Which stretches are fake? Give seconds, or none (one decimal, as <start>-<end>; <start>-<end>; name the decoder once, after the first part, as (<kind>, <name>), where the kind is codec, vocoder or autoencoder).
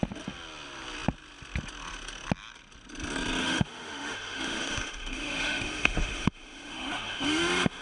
3.4-7.8 (autoencoder, DAC-VAE)